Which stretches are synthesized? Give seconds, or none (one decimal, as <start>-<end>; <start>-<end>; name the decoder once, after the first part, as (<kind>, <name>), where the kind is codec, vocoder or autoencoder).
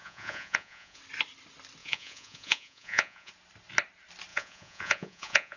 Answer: 0.0-1.0 (vocoder, Vocos); 1.8-3.3; 4.3-5.6